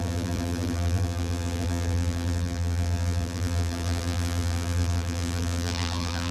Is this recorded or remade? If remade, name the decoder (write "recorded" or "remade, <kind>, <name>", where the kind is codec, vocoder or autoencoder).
remade, vocoder, BigVGAN v2